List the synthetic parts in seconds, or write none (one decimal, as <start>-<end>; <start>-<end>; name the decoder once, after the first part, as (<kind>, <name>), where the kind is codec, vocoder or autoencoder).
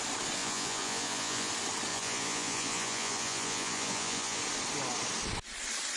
0.4-1.5 (vocoder, Vocos); 1.9-4.4